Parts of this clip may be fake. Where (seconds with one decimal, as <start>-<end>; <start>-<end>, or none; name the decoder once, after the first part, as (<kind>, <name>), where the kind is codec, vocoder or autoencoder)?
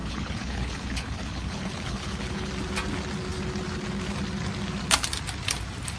0.0-2.5 (codec, HILCodec)